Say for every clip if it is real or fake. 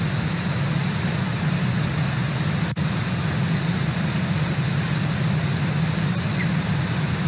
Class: real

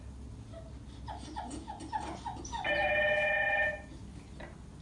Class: real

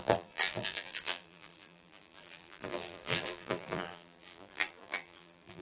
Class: fake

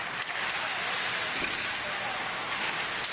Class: fake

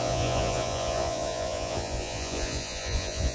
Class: fake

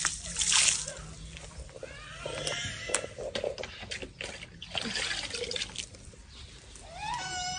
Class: real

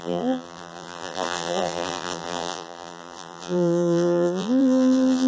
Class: fake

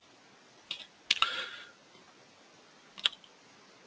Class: real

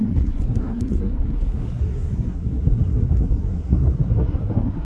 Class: fake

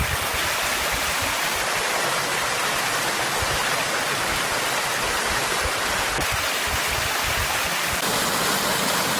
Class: real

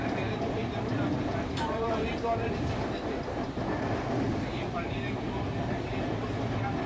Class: fake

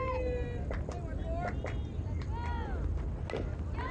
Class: real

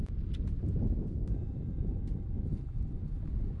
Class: real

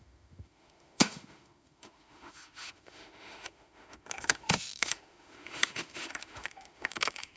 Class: fake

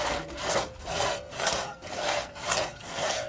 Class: fake